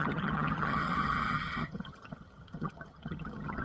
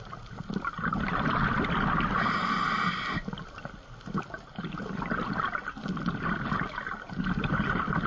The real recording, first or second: second